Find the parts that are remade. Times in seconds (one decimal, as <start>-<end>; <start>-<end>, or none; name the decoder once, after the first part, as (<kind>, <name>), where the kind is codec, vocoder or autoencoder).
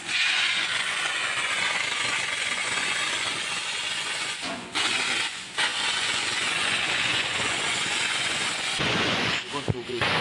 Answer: 0.0-10.2 (vocoder, Vocos)